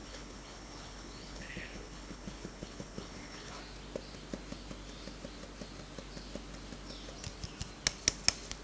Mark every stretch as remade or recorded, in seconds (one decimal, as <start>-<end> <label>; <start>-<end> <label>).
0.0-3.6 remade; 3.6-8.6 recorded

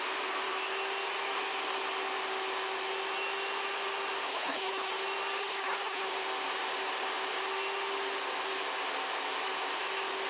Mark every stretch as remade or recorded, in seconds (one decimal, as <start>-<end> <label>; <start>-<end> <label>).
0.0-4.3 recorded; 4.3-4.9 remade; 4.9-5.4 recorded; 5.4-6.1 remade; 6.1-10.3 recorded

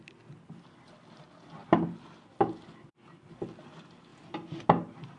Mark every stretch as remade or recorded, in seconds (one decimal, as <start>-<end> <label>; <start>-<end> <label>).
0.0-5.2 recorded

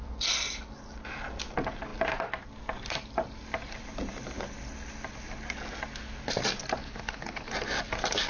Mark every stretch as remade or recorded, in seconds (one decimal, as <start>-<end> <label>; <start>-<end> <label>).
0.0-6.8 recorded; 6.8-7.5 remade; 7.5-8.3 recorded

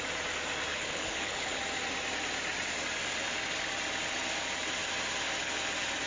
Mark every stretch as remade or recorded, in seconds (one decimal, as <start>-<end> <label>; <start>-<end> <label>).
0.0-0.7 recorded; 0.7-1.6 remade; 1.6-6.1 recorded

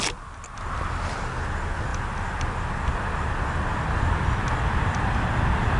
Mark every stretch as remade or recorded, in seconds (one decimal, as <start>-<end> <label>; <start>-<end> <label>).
0.0-5.8 recorded